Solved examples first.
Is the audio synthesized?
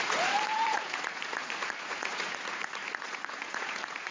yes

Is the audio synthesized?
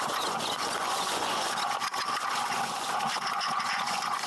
yes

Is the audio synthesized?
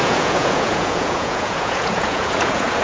yes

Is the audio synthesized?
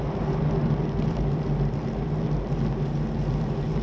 no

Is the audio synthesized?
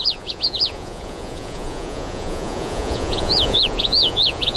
yes